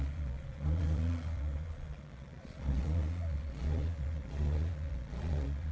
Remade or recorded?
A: remade